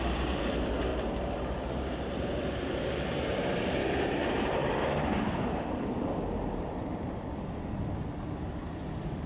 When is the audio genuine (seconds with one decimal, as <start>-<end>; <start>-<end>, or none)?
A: 0.9-1.4; 6.9-9.3